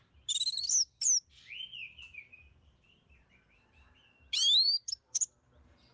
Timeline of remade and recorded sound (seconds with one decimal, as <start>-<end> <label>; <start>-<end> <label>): 0.0-5.9 recorded